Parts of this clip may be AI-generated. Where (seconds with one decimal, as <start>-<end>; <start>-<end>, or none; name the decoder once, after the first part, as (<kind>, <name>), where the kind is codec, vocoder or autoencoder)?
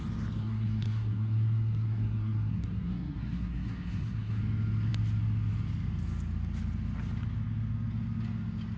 0.4-4.4 (codec, SNAC)